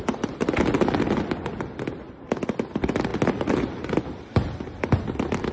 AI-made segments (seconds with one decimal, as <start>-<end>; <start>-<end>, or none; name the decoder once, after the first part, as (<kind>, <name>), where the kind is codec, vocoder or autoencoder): none